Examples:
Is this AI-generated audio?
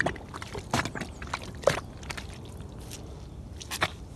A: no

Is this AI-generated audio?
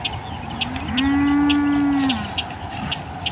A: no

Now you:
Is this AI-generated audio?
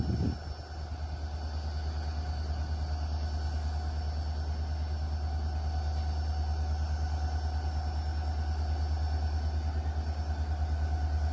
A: no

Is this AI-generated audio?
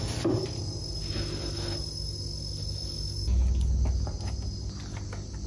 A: no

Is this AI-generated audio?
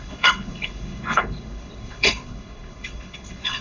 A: yes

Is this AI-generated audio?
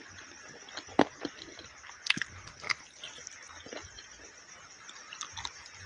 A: no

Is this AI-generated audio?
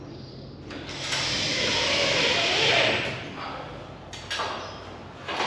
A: no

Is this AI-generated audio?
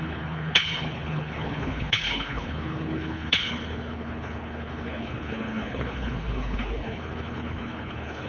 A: yes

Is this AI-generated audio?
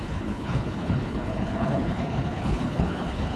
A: yes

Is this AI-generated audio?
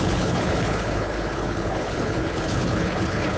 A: yes